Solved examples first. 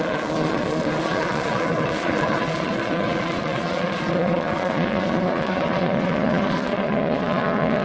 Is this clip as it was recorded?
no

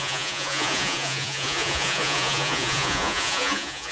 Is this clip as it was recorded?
no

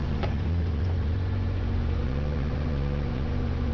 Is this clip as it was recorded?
no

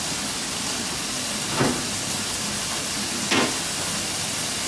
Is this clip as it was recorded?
yes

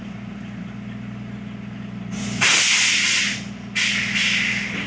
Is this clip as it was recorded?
yes